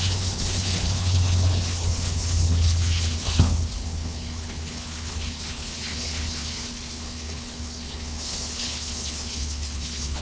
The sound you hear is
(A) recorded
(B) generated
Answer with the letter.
B